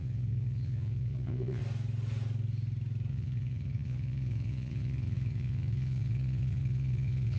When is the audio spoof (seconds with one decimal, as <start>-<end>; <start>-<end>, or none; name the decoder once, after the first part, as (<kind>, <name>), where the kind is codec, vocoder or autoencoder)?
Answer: 0.0-1.6 (vocoder, Vocos); 3.1-7.4